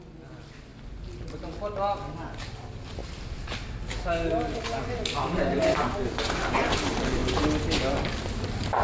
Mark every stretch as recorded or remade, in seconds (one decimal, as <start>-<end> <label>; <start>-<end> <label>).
0.0-8.8 recorded